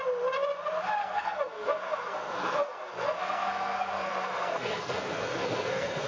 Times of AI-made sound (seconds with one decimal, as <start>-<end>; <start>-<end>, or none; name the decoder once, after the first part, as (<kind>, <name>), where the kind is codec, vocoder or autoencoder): 1.0-6.1 (codec, SNAC)